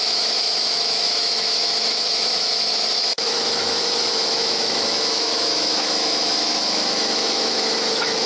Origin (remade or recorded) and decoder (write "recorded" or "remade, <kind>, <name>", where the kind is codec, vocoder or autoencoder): remade, autoencoder, DAC-VAE